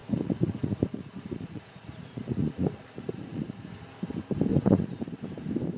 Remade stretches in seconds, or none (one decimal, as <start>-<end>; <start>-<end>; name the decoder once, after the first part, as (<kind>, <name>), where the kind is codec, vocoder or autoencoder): 0.0-3.5 (vocoder, Vocos); 4.5-5.1